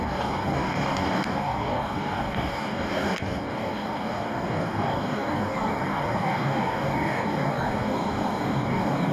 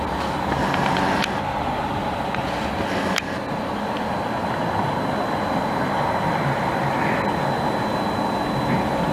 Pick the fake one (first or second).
first